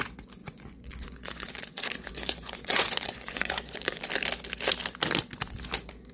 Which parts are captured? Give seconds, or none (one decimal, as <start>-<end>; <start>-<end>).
0.0-0.4; 4.1-6.1